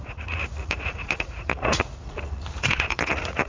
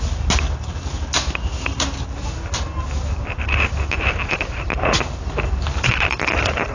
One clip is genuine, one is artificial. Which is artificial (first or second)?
first